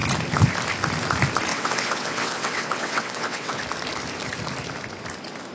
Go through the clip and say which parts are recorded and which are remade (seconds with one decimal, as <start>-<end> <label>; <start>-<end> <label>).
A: 0.0-1.5 recorded; 1.5-3.6 remade; 3.6-5.5 recorded